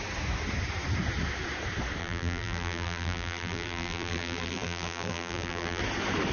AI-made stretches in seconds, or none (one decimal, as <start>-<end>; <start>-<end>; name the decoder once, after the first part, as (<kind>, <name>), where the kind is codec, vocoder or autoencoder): 2.0-5.8 (vocoder, BigVGAN v2)